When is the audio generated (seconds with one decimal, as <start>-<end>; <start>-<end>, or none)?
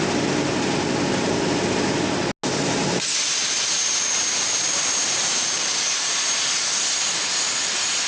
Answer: 2.8-5.3